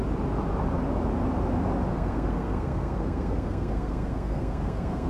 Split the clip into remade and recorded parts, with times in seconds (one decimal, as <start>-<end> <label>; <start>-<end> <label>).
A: 0.0-1.9 recorded; 1.9-5.1 remade